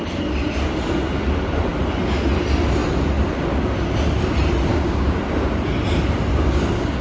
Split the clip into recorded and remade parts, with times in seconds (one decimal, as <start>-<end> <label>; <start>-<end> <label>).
0.0-4.7 recorded; 4.7-5.2 remade; 5.2-6.3 recorded; 6.3-7.0 remade